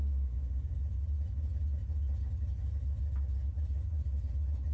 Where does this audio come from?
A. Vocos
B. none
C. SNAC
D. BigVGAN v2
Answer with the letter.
B